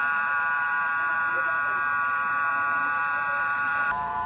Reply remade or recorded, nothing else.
remade